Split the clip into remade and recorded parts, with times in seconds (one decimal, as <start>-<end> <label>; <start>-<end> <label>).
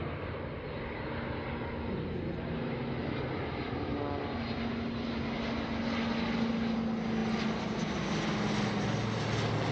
0.0-9.7 recorded